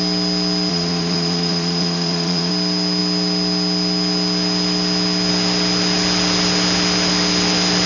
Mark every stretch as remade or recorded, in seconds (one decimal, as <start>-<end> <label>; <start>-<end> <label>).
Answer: 0.0-0.7 recorded; 0.7-2.5 remade; 2.5-7.9 recorded